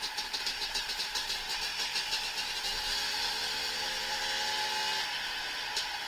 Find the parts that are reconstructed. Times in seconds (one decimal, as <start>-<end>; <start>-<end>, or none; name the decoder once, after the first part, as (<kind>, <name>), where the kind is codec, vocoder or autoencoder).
0.0-1.7 (vocoder, BigVGAN v2); 5.4-6.1

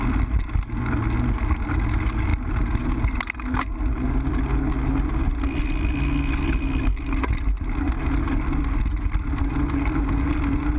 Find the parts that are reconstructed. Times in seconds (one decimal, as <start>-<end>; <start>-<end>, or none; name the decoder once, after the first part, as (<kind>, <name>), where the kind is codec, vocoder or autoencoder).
none

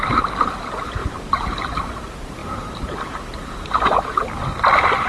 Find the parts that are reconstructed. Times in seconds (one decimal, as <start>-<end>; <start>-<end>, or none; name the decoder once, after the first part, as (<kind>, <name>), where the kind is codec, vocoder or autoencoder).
1.0-1.8 (vocoder, BigVGAN v2); 2.4-4.2

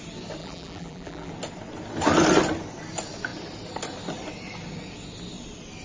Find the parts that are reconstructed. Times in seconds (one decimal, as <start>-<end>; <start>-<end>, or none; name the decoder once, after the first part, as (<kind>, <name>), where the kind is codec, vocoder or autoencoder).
0.4-1.3 (vocoder, BigVGAN v2)

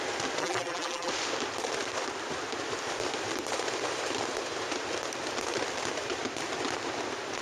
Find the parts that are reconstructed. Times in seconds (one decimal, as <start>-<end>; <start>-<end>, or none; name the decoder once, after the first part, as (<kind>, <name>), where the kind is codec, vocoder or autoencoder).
0.4-1.1 (vocoder, BigVGAN v2)